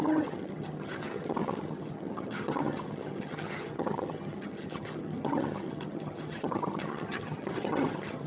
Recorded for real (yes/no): no